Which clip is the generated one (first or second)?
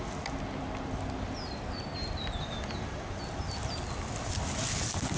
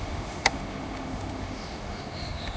second